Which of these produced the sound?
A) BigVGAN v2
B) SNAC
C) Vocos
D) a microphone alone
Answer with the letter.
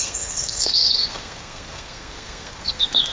B